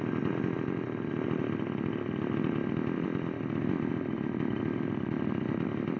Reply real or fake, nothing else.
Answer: real